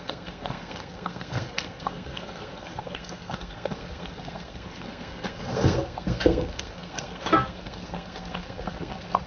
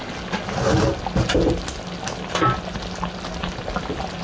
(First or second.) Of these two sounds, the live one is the second